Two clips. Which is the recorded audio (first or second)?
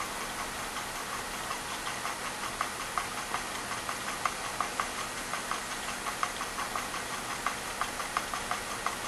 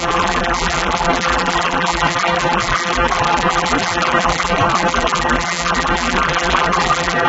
first